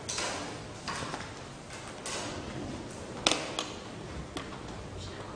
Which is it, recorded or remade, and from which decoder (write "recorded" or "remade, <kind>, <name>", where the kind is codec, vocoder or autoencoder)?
recorded